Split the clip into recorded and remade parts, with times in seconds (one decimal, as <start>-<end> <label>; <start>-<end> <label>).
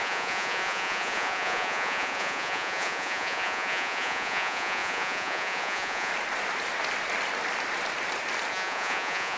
0.0-6.1 remade; 6.1-8.5 recorded; 8.5-9.4 remade